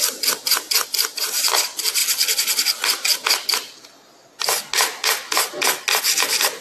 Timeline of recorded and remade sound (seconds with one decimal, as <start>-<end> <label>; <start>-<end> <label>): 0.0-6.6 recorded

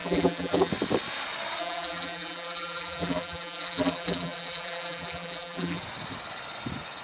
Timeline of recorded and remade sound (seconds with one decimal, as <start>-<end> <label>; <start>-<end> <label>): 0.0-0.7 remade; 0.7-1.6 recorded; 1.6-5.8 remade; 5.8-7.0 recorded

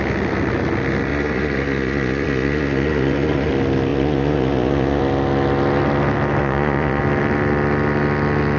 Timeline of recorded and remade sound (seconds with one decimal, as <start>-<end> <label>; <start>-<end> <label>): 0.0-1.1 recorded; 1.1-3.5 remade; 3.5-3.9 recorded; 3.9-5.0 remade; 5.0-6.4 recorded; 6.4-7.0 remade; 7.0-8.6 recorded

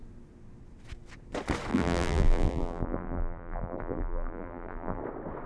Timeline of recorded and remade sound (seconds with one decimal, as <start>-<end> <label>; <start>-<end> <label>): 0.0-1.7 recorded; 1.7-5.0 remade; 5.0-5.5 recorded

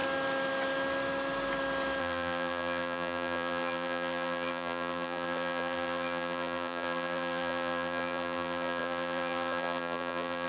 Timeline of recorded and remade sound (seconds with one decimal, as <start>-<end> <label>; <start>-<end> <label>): 0.0-2.0 recorded; 2.0-10.5 remade